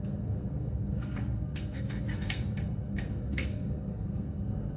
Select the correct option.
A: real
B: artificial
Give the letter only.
B